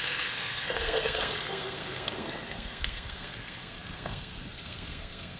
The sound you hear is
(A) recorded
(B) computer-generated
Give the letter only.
B